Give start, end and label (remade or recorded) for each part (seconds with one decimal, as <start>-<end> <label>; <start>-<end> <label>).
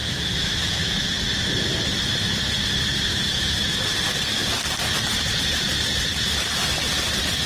0.0-0.9 remade; 0.9-3.1 recorded; 3.1-3.8 remade; 3.8-7.5 recorded